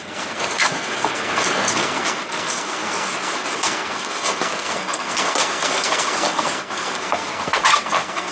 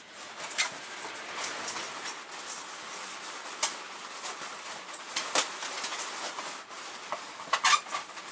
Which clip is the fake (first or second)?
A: first